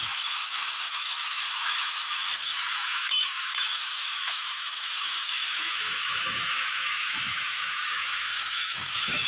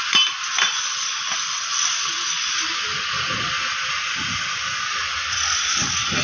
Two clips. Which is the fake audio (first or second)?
first